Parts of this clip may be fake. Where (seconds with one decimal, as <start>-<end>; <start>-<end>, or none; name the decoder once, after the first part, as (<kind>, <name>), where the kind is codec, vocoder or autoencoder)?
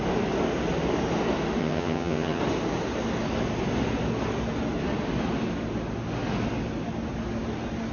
1.6-2.4 (vocoder, HiFi-GAN)